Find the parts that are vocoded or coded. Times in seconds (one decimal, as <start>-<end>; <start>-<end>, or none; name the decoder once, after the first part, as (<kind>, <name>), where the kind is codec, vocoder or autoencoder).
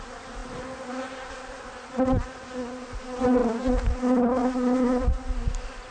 0.4-1.3 (vocoder, BigVGAN v2); 4.4-4.9